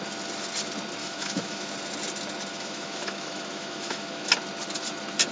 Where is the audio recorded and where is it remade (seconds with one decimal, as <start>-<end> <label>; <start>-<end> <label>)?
0.0-1.0 recorded; 1.0-1.7 remade; 1.7-2.5 recorded; 2.5-4.3 remade; 4.3-5.3 recorded